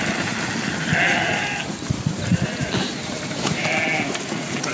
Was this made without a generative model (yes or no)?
yes